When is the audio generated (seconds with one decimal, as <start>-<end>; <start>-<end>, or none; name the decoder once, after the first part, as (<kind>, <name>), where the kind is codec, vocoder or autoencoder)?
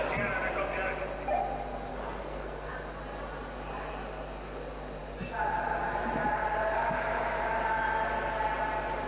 1.9-2.7 (codec, SNAC)